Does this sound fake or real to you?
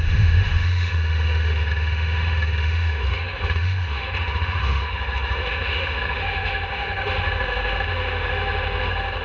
fake